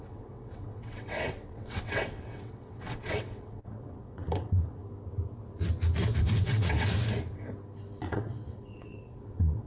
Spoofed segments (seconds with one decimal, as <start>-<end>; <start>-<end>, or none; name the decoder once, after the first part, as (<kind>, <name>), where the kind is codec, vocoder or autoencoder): 0.0-4.8 (vocoder, WaveNeXt); 6.2-7.0; 8.0-9.7